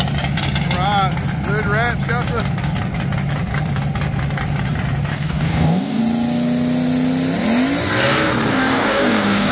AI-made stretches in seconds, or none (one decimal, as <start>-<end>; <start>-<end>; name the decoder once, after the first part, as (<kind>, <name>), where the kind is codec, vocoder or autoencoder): 5.1-6.0 (codec, DAC); 8.5-9.5